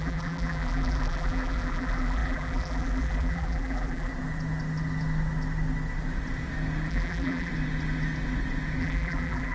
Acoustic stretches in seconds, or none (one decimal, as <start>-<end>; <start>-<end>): 4.1-6.9; 7.5-8.8